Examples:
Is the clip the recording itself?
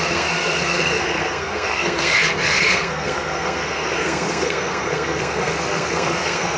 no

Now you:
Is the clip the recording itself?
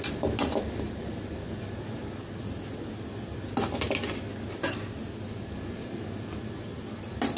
yes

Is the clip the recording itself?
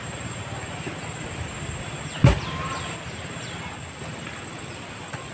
yes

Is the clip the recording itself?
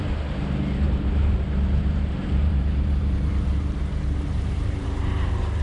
no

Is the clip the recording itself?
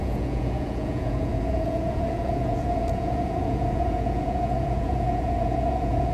no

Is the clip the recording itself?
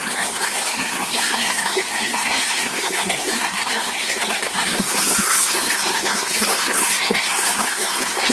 no